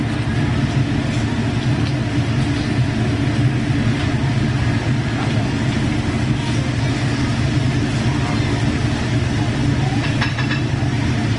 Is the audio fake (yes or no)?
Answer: no